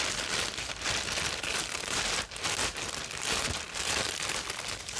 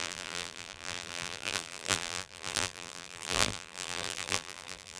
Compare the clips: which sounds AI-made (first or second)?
second